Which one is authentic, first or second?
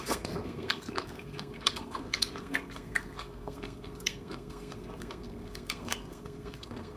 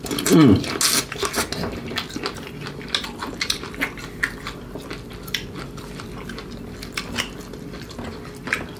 second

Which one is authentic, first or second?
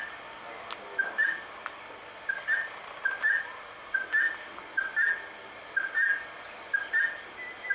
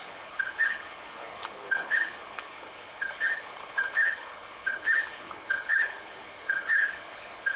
first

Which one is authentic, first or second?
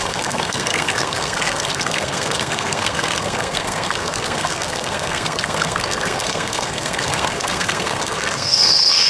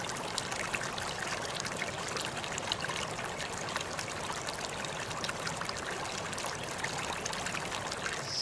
second